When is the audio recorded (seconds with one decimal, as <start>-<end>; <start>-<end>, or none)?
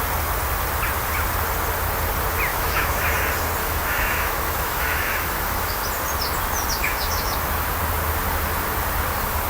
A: 0.0-2.5; 3.1-3.6; 5.8-6.8; 7.3-9.5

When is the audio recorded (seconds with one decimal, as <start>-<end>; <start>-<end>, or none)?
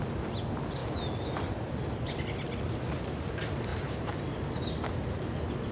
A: 0.0-3.7; 4.2-5.7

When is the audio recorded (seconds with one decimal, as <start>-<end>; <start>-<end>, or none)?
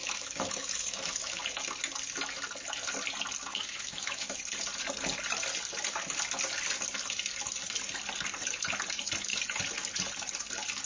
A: 1.4-3.5; 4.4-10.9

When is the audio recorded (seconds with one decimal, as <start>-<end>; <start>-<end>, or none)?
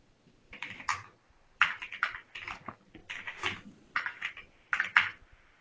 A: 3.0-3.7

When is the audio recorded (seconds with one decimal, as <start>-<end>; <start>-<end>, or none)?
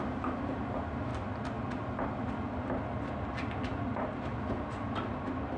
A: 1.1-4.5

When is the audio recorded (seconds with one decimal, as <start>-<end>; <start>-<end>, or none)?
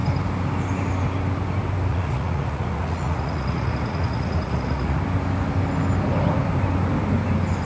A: 0.0-1.9; 5.0-7.6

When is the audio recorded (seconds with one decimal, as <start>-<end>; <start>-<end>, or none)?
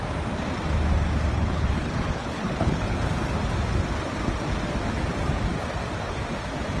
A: 0.0-1.3; 3.0-6.8